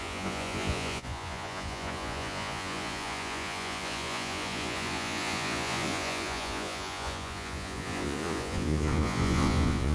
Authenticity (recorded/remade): remade